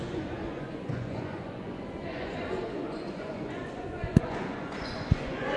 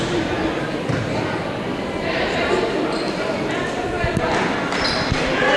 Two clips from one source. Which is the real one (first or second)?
second